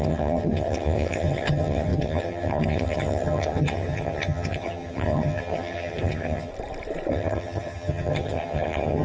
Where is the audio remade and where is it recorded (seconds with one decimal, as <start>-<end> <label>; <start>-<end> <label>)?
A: 0.0-6.5 remade; 6.5-7.1 recorded; 7.1-9.0 remade

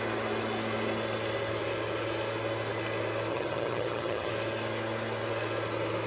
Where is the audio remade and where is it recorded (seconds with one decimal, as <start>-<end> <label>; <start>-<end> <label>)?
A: 0.0-3.3 recorded; 3.3-4.3 remade; 4.3-6.1 recorded

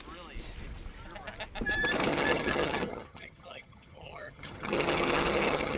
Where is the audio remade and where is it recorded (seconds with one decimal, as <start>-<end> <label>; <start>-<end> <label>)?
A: 0.0-2.1 recorded; 2.1-5.8 remade

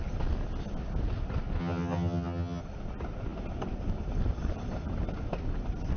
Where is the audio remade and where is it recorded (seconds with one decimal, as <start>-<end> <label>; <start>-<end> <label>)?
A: 0.0-1.6 recorded; 1.6-2.6 remade; 2.6-6.0 recorded

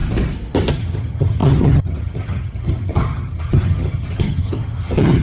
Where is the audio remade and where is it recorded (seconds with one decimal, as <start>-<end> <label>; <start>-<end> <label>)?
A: 0.0-0.7 recorded; 0.7-5.2 remade

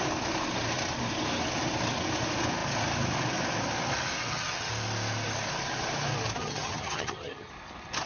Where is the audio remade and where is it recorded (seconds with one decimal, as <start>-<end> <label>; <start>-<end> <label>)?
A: 0.0-4.2 recorded; 4.2-4.7 remade; 4.7-6.4 recorded; 6.4-7.5 remade; 7.5-8.1 recorded

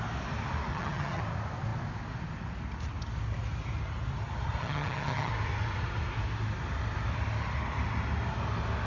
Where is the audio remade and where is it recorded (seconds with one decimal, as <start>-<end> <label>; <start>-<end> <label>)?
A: 0.0-0.7 recorded; 0.7-1.2 remade; 1.2-4.6 recorded; 4.6-5.3 remade; 5.3-8.9 recorded

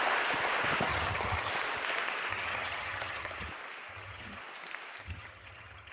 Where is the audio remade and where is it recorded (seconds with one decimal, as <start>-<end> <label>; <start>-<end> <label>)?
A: 0.0-0.9 recorded; 0.9-1.5 remade; 1.5-2.3 recorded; 2.3-3.5 remade; 3.5-3.9 recorded; 3.9-4.4 remade; 4.4-5.0 recorded; 5.0-5.9 remade